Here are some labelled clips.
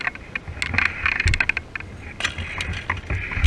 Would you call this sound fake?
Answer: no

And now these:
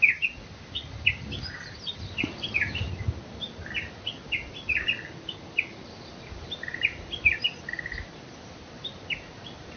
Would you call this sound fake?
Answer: no